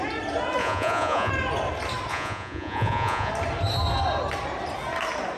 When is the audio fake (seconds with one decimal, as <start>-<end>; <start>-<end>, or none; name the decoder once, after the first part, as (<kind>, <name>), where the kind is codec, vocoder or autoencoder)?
0.6-1.3 (vocoder, Vocos); 2.1-3.3